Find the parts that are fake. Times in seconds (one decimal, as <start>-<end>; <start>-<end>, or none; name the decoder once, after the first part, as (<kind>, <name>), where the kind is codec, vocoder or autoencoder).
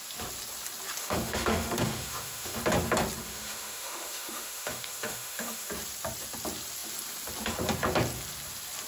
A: 1.0-2.6 (autoencoder, DAC-VAE); 3.2-5.7